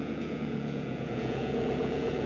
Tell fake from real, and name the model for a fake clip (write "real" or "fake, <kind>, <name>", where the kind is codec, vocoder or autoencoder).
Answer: fake, vocoder, Vocos